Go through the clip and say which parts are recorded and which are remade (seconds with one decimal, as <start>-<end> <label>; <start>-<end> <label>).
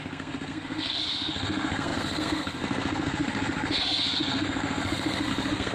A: 0.0-5.7 remade